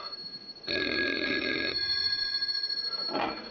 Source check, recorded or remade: remade